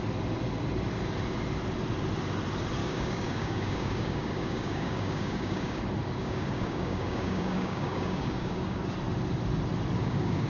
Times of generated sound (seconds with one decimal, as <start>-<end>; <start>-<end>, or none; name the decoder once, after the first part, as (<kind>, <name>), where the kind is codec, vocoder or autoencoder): 2.8-5.8 (codec, DAC); 6.2-8.8; 10.0-10.5